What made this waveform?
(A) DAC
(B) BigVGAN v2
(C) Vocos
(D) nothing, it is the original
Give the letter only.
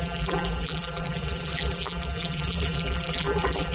B